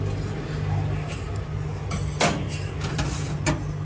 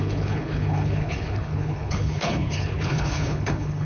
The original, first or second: first